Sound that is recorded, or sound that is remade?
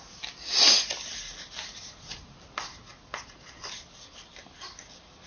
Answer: recorded